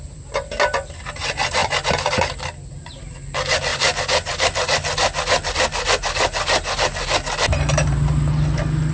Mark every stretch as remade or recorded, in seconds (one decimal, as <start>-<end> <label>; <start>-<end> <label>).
0.0-8.9 recorded